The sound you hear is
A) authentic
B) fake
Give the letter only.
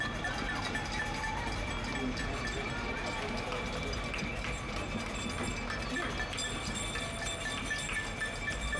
A